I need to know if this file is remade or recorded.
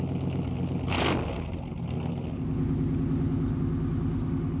recorded